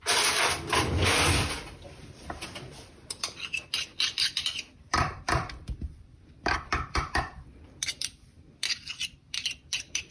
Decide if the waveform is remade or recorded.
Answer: remade